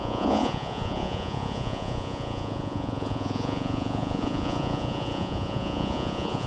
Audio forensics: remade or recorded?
remade